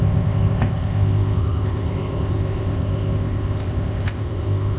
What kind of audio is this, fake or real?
fake